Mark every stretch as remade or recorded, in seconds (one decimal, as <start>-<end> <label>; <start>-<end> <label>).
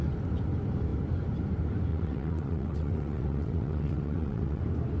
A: 0.0-1.9 recorded; 1.9-4.6 remade; 4.6-5.0 recorded